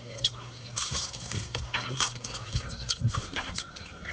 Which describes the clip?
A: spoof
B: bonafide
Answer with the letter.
A